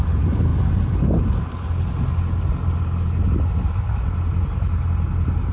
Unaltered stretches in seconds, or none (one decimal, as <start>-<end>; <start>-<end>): 0.0-5.5